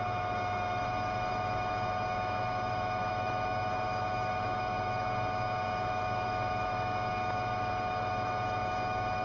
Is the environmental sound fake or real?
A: fake